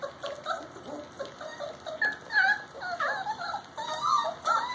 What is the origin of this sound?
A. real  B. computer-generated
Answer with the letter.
A